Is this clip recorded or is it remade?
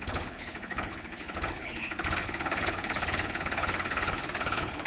remade